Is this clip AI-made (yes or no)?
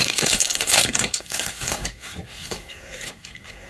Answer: yes